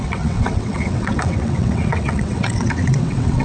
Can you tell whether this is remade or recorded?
remade